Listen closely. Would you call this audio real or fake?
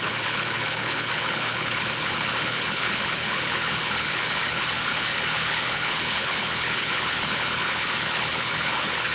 fake